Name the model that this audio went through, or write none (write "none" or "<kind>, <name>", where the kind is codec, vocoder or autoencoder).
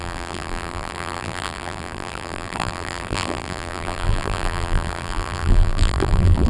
vocoder, BigVGAN v2